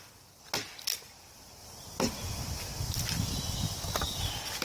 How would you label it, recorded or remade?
recorded